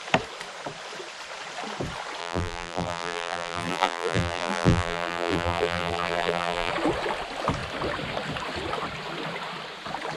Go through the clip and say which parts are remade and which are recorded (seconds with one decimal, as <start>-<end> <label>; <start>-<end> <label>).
0.0-2.2 recorded; 2.2-6.7 remade; 6.7-10.2 recorded